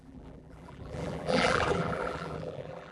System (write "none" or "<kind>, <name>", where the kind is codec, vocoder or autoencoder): vocoder, BigVGAN v2